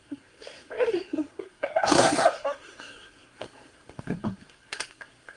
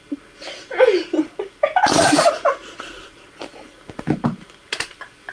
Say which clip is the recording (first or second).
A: second